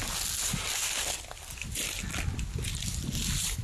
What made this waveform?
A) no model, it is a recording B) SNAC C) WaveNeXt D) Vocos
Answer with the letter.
A